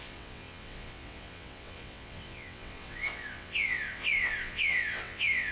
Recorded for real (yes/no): no